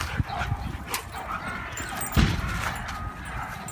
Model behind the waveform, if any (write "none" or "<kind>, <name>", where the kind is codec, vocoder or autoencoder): none